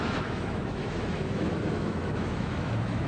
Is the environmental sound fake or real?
fake